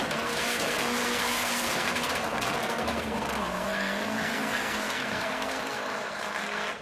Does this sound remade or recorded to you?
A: remade